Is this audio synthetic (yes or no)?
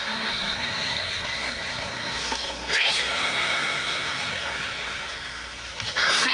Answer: yes